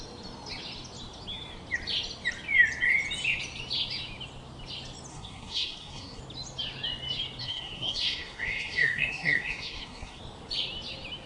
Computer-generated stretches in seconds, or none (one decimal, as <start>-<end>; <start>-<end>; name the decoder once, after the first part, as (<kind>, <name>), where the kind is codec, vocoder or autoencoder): 5.1-6.2 (codec, SNAC); 7.4-10.2